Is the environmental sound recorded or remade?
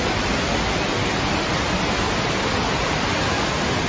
recorded